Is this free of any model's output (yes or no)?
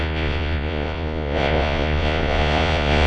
no